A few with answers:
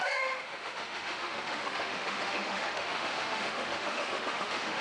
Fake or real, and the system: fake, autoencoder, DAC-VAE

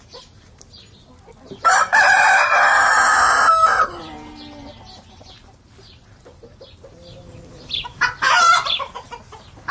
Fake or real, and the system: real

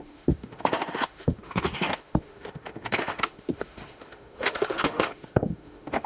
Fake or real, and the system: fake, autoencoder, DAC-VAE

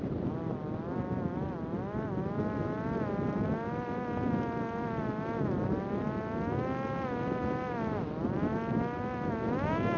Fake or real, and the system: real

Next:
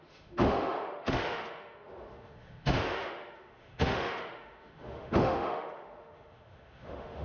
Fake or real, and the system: fake, autoencoder, DAC-VAE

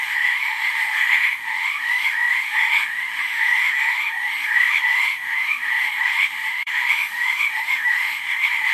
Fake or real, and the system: fake, autoencoder, DAC-VAE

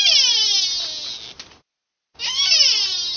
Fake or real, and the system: real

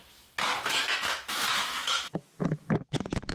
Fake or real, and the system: fake, autoencoder, DAC-VAE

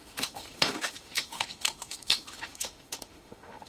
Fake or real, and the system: fake, autoencoder, DAC-VAE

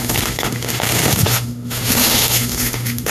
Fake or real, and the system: fake, autoencoder, DAC-VAE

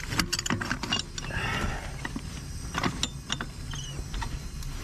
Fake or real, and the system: real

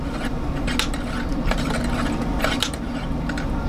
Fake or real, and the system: real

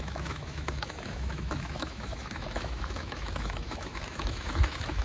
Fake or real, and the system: fake, autoencoder, DAC-VAE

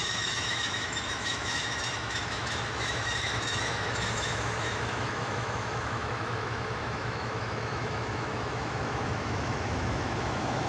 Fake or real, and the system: fake, autoencoder, DAC-VAE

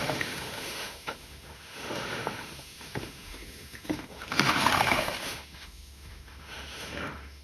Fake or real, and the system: fake, autoencoder, DAC-VAE